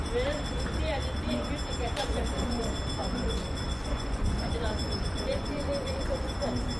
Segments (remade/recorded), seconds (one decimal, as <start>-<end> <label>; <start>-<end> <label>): 0.0-1.8 recorded; 1.8-2.6 remade; 2.6-3.0 recorded; 3.0-6.3 remade; 6.3-6.8 recorded